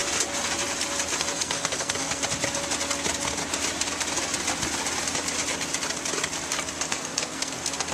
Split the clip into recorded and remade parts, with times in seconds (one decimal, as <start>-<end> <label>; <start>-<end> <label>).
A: 0.0-1.2 recorded; 1.2-2.2 remade; 2.2-6.9 recorded; 6.9-7.9 remade